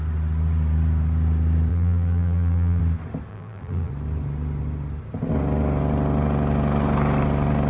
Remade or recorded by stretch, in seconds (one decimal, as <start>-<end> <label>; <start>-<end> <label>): 0.0-1.7 recorded; 1.7-2.8 remade; 2.8-3.3 recorded; 3.3-3.9 remade; 3.9-7.7 recorded